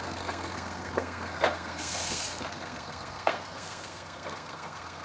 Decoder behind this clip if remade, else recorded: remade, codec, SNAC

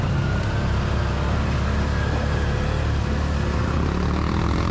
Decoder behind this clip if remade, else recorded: recorded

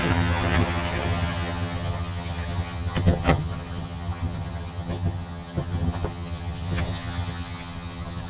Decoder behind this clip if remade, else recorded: remade, vocoder, HiFi-GAN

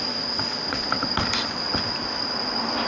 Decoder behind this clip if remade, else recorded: recorded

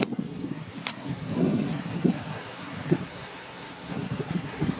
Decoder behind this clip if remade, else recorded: remade, codec, SNAC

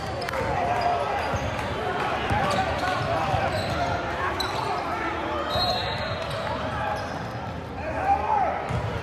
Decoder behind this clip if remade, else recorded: remade, vocoder, BigVGAN v2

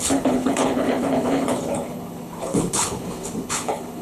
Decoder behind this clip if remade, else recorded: remade, codec, HILCodec